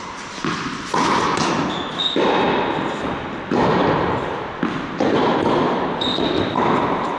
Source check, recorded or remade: recorded